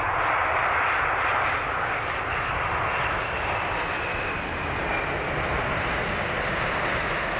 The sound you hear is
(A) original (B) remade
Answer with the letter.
A